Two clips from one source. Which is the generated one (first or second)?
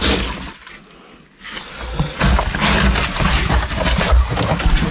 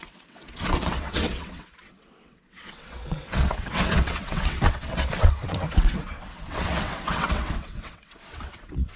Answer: second